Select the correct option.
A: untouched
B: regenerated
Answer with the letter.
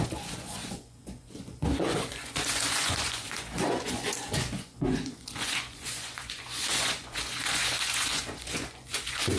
B